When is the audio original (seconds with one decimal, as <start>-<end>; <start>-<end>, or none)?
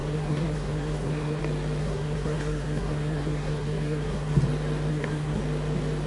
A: 1.4-1.8; 4.4-4.9; 5.4-6.1